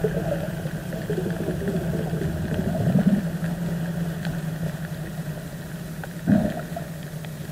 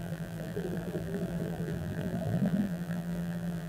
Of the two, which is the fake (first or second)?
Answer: second